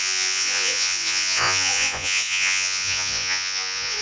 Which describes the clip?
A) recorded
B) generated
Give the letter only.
B